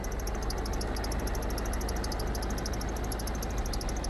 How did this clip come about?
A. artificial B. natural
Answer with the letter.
B